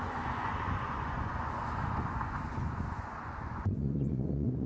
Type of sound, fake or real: fake